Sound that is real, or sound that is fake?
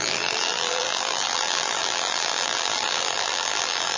fake